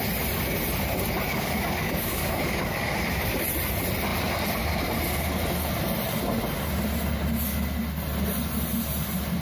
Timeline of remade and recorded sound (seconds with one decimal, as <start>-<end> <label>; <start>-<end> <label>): 0.0-1.3 recorded; 1.3-2.9 remade; 2.9-9.4 recorded